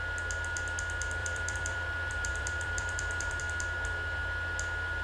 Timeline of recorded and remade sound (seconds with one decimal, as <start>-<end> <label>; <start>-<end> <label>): 0.0-1.2 recorded; 1.2-3.4 remade; 3.4-5.0 recorded